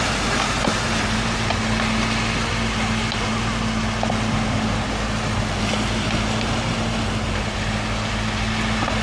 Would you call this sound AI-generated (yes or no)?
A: no